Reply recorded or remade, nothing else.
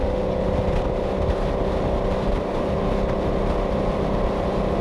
recorded